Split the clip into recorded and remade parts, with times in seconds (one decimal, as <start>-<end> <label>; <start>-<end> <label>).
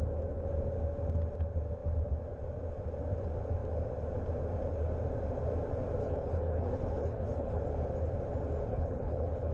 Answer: 0.0-6.0 recorded; 6.0-7.6 remade; 7.6-8.7 recorded; 8.7-9.5 remade